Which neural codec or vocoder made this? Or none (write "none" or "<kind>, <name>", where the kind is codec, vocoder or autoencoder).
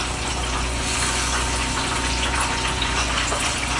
vocoder, Vocos